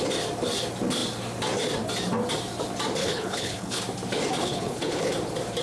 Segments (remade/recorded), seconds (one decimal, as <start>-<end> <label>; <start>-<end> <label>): 0.0-3.0 recorded; 3.0-3.8 remade; 3.8-4.4 recorded; 4.4-5.1 remade; 5.1-5.6 recorded